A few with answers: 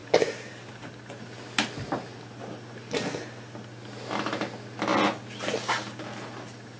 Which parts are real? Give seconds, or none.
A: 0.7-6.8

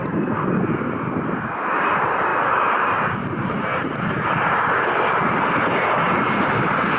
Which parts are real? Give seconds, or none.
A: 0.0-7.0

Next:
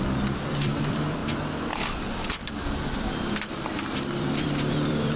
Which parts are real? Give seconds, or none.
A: 1.2-3.5